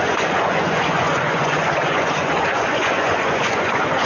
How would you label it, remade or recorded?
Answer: remade